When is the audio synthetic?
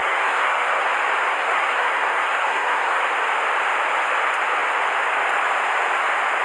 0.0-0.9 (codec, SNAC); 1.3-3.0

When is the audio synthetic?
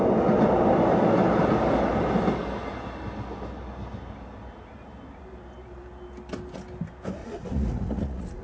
7.2-8.4 (vocoder, Vocos)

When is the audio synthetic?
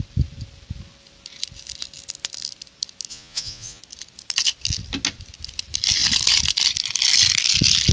3.1-3.8 (vocoder, Vocos)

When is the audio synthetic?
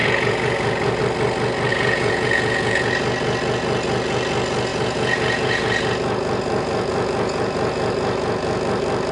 0.0-1.0 (vocoder, Vocos); 1.7-2.9; 4.7-8.6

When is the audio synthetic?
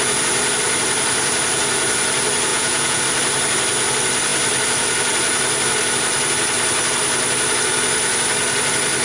2.5-3.0 (vocoder, Vocos)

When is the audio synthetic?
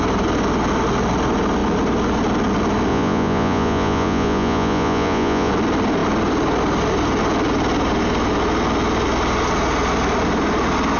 2.9-5.5 (vocoder, Vocos)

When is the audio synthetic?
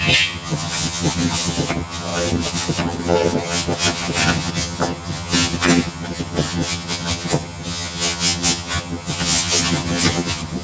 0.0-10.6 (vocoder, HiFi-GAN)